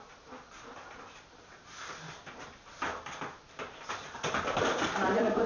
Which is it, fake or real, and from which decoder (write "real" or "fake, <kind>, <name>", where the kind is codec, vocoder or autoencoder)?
real